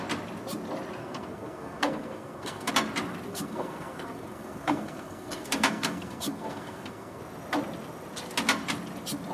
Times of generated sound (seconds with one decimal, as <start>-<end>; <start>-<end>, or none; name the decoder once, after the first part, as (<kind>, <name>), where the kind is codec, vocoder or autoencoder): 1.0-2.7 (codec, SNAC); 3.3-7.2